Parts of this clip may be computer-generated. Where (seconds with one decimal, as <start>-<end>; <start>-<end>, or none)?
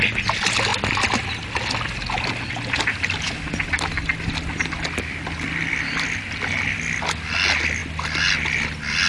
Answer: none